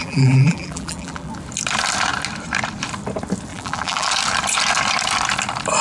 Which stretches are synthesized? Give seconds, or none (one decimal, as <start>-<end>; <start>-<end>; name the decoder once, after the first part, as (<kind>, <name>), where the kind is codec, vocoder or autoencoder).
0.0-1.3 (vocoder, BigVGAN v2); 3.5-4.1